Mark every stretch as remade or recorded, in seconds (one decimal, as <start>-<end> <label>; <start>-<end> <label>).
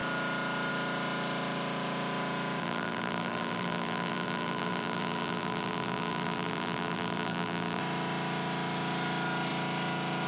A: 0.0-2.6 recorded; 2.6-7.8 remade; 7.8-10.3 recorded